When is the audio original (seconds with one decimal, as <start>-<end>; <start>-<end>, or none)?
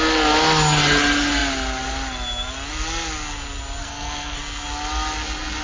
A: 0.0-3.8; 4.4-5.6